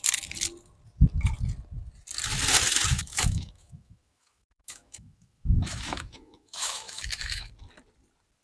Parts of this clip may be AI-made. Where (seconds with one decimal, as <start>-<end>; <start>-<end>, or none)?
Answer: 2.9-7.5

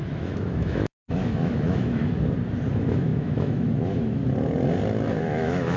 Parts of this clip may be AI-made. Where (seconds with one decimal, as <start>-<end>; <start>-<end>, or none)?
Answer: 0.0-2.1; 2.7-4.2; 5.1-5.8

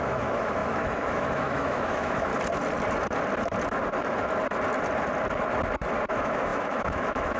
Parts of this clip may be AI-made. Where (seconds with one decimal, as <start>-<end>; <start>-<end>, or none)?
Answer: 0.0-2.3; 6.1-7.4